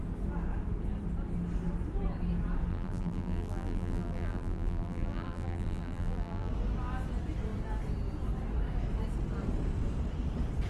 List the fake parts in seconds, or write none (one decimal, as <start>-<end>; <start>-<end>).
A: 2.7-6.5